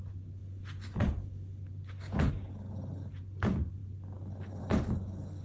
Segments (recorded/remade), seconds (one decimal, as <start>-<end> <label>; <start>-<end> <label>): 0.0-5.4 recorded